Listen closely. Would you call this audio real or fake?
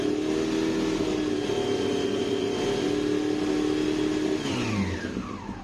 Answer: real